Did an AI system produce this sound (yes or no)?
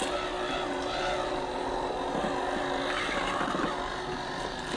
no